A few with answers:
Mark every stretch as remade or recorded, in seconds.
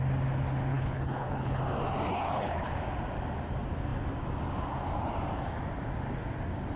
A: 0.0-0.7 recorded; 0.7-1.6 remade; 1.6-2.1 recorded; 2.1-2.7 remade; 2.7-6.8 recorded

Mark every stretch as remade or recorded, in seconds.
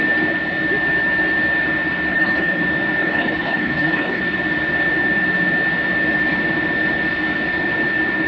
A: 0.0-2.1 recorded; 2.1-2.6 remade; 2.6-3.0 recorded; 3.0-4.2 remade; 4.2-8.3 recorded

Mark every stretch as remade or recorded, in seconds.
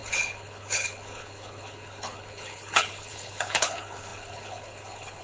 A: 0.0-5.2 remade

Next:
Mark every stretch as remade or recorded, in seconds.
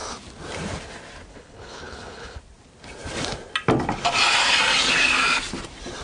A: 0.0-1.3 recorded; 1.3-2.4 remade; 2.4-6.0 recorded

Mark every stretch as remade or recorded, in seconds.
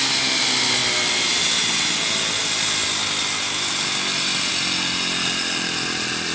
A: 0.0-6.3 recorded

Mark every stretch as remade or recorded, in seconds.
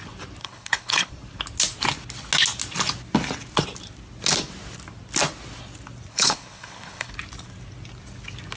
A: 0.0-0.4 recorded; 0.4-1.1 remade; 1.1-6.1 recorded; 6.1-7.1 remade; 7.1-8.6 recorded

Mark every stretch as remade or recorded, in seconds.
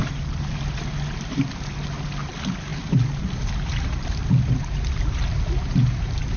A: 0.0-6.4 recorded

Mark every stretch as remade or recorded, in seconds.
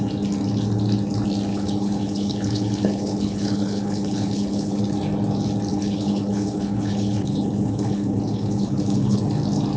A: 0.0-1.5 recorded; 1.5-4.8 remade; 4.8-5.7 recorded; 5.7-9.2 remade; 9.2-9.8 recorded